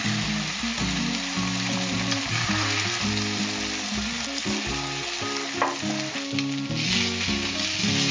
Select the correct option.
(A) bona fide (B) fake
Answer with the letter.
A